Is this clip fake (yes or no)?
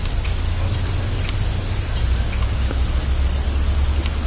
no